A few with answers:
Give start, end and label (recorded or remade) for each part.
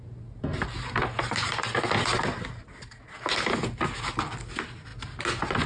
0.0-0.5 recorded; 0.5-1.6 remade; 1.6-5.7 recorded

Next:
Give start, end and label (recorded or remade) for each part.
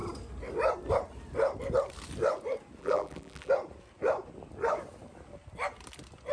0.0-2.8 recorded; 2.8-3.5 remade; 3.5-6.3 recorded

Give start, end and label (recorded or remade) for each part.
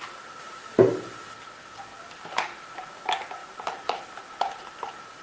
0.0-1.9 recorded; 1.9-2.9 remade; 2.9-3.4 recorded; 3.4-4.7 remade; 4.7-5.2 recorded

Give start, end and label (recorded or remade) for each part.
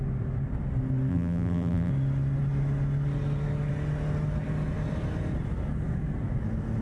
0.0-1.1 recorded; 1.1-1.9 remade; 1.9-6.8 recorded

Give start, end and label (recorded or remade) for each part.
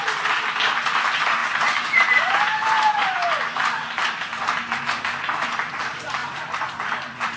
0.0-1.4 recorded; 1.4-3.3 remade; 3.3-4.3 recorded; 4.3-4.8 remade; 4.8-6.2 recorded; 6.2-7.4 remade